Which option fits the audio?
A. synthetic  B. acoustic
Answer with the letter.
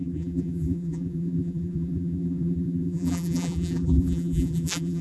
A